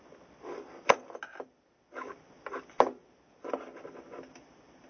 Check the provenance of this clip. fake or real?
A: real